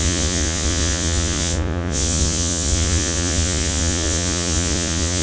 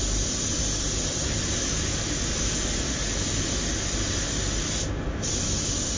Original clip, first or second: second